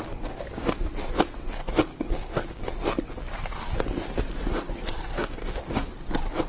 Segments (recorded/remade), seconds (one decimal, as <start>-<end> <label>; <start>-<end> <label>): 0.0-1.9 recorded; 1.9-2.7 remade; 2.7-5.2 recorded; 5.2-5.7 remade; 5.7-6.5 recorded